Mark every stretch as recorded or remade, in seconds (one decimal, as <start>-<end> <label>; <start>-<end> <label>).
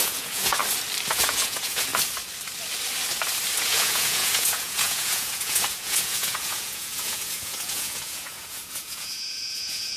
0.0-0.6 remade; 0.6-1.1 recorded; 1.1-1.9 remade; 1.9-3.6 recorded; 3.6-10.0 remade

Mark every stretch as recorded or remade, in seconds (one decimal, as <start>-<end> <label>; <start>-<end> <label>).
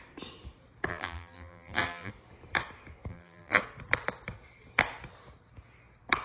0.0-0.9 recorded; 0.9-2.1 remade; 2.1-3.1 recorded; 3.1-3.6 remade; 3.6-6.2 recorded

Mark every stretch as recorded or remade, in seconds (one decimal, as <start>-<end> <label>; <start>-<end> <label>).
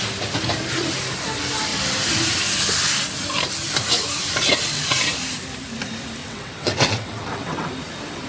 0.0-4.4 recorded; 4.4-5.0 remade; 5.0-6.2 recorded; 6.2-7.7 remade; 7.7-8.3 recorded